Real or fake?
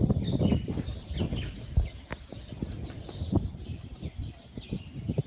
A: real